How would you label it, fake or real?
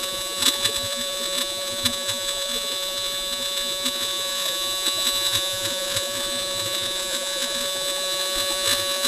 fake